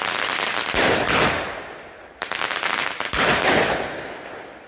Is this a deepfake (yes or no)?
no